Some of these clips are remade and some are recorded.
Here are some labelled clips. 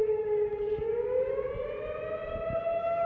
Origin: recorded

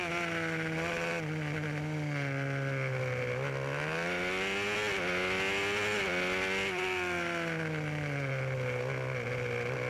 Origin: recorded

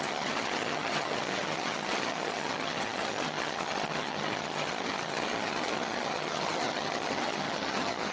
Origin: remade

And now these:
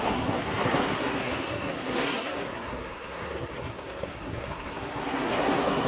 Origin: remade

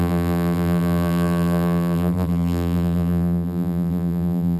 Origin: remade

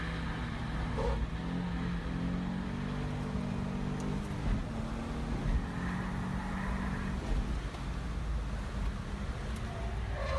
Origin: recorded